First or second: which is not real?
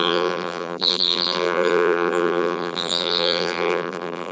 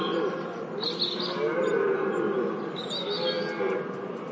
first